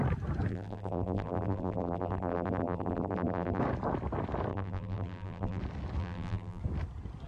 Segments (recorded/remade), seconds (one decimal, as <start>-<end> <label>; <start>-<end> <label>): 0.0-0.5 recorded; 0.5-3.6 remade; 3.6-4.5 recorded; 4.5-5.6 remade; 5.6-6.0 recorded; 6.0-6.6 remade; 6.6-7.3 recorded

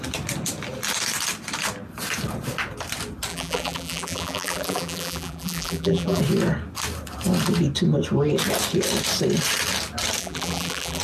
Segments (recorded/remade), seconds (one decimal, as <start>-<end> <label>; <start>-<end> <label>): 0.0-3.3 recorded; 3.3-6.2 remade; 6.2-10.2 recorded; 10.2-11.0 remade

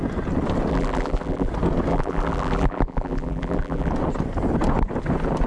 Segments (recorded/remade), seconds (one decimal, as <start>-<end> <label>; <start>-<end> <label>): 0.0-0.7 recorded; 0.7-1.5 remade; 1.5-1.9 recorded; 1.9-3.9 remade; 3.9-5.5 recorded

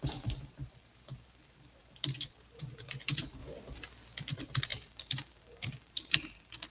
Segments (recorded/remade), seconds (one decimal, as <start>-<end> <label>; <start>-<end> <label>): 0.0-3.4 remade; 3.4-4.3 recorded; 4.3-6.7 remade

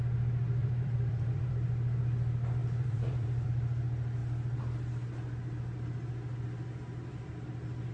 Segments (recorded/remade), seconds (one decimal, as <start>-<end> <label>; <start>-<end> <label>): 0.0-0.6 recorded; 0.6-1.5 remade; 1.5-2.6 recorded; 2.6-3.5 remade; 3.5-7.9 recorded